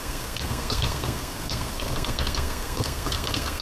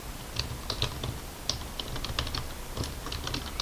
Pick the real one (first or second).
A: second